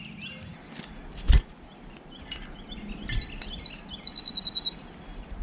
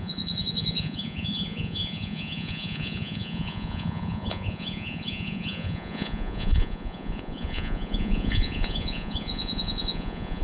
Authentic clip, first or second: first